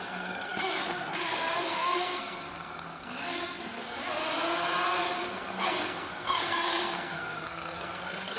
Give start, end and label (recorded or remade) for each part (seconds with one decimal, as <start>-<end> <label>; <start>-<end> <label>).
0.0-4.0 remade; 4.0-5.2 recorded; 5.2-8.4 remade